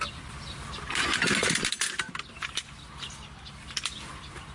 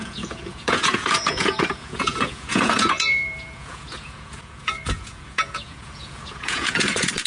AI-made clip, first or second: second